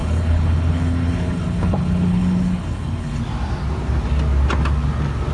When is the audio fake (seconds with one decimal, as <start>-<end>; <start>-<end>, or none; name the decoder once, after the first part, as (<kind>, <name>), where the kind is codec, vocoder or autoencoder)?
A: 0.0-3.2 (codec, HILCodec)